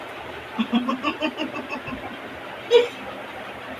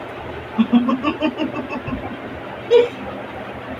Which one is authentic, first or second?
second